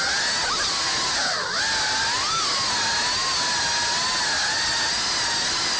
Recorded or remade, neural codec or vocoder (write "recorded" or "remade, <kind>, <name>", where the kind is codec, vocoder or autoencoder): recorded